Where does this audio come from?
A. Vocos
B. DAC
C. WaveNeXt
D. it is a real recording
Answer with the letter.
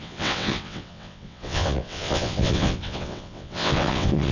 C